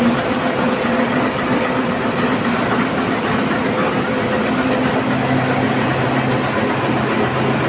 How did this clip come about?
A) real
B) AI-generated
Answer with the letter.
A